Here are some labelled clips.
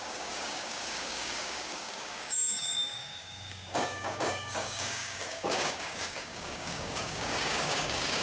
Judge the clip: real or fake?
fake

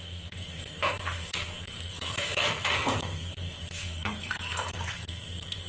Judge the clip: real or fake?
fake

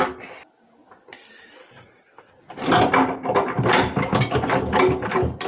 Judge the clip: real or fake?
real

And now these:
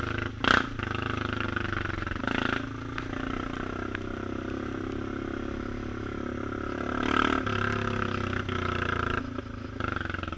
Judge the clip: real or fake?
real